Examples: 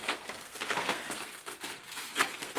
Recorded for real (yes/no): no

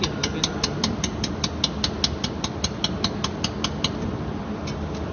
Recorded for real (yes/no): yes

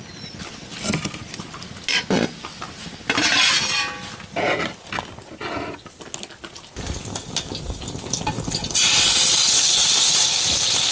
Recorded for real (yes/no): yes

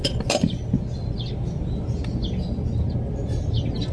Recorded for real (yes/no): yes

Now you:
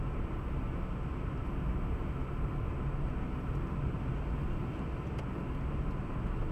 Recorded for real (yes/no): yes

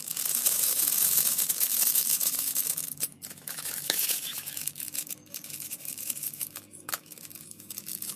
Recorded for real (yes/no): no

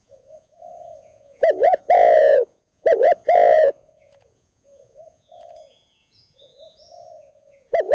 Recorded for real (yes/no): no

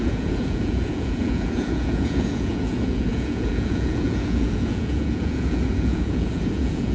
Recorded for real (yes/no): no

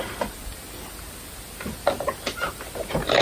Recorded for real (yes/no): yes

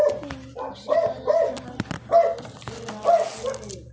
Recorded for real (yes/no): yes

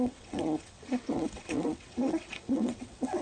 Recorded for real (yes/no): no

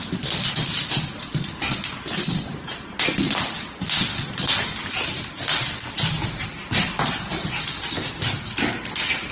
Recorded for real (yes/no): yes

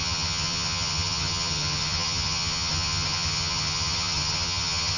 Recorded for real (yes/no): no